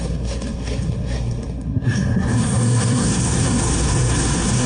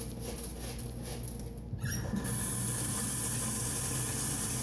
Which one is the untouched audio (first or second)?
second